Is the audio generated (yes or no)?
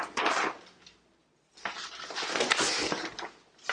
no